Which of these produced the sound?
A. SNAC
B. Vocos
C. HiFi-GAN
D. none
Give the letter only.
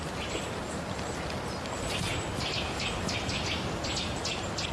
D